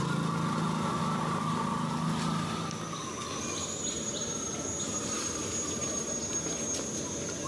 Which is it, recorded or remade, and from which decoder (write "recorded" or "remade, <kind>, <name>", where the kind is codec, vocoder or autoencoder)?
recorded